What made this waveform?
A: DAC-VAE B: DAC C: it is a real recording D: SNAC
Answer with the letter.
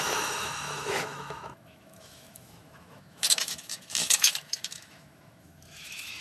A